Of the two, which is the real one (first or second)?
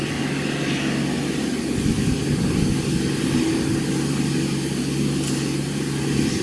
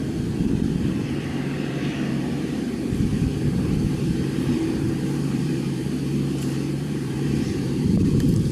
first